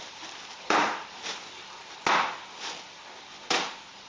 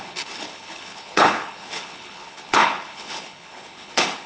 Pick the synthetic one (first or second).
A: second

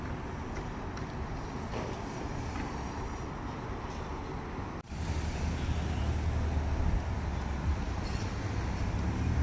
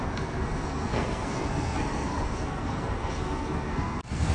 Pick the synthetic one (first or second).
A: second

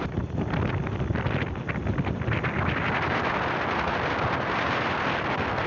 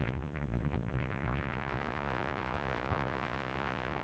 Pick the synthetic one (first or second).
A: second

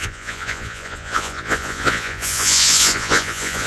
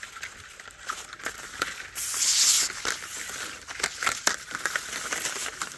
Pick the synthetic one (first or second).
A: first